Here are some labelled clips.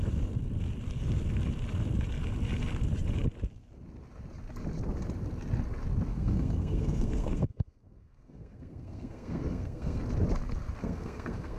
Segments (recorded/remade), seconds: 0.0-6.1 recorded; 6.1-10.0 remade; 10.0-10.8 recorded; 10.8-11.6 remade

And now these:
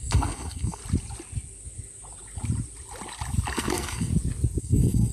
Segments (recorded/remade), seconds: 0.0-0.8 remade; 0.8-3.5 recorded; 3.5-4.1 remade; 4.1-4.6 recorded; 4.6-5.1 remade

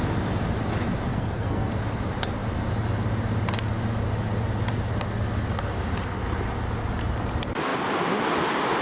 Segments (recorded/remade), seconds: 0.0-1.1 recorded; 1.1-1.7 remade; 1.7-8.8 recorded